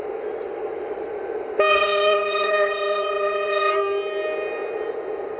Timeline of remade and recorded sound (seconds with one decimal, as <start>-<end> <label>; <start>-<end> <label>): 0.0-1.7 recorded; 1.7-3.7 remade; 3.7-5.4 recorded

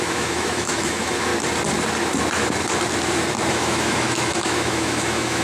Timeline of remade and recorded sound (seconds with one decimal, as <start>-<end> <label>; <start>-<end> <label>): 0.0-1.3 remade; 1.3-3.5 recorded; 3.5-5.4 remade

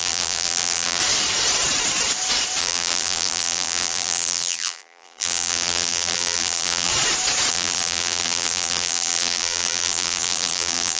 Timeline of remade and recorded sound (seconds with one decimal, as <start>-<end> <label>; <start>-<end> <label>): 0.0-1.0 remade; 1.0-2.6 recorded; 2.6-6.9 remade; 6.9-7.5 recorded; 7.5-11.0 remade

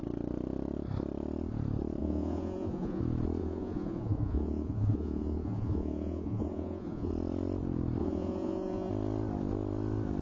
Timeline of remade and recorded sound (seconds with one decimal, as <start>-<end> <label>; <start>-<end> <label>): 0.0-2.0 recorded; 2.0-3.0 remade; 3.0-3.4 recorded; 3.4-7.1 remade; 7.1-8.0 recorded; 8.0-8.9 remade; 8.9-10.2 recorded